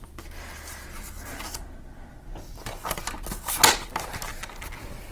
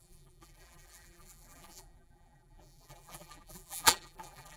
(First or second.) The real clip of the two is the first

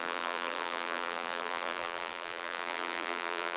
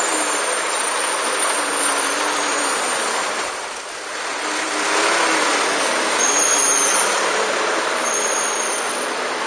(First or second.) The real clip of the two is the second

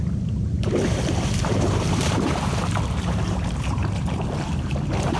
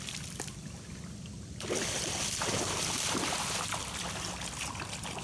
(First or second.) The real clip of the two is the second